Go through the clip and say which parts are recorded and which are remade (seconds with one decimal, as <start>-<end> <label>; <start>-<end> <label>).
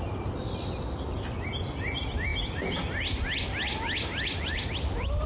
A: 0.0-5.3 recorded